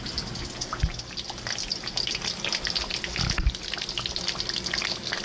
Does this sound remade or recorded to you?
recorded